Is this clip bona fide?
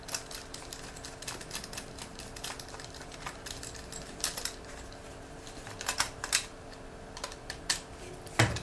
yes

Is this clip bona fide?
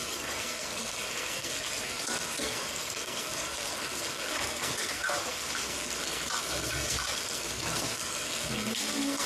no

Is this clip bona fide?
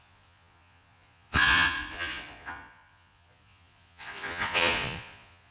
no